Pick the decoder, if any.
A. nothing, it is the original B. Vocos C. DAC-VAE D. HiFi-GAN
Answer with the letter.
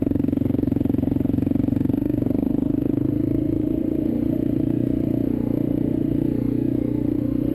C